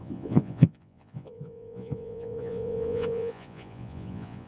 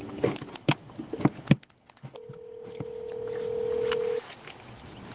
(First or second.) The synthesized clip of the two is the first